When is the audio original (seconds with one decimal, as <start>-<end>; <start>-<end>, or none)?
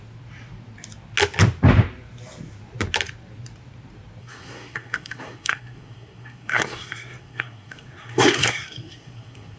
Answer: 0.0-4.2